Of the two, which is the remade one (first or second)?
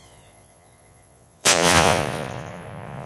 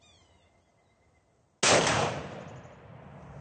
first